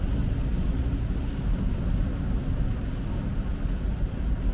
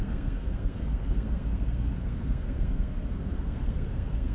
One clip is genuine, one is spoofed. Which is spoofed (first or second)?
second